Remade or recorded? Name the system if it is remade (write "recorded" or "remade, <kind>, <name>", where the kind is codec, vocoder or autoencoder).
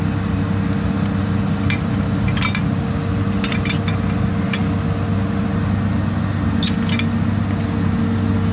recorded